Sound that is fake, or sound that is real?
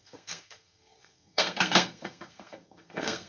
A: fake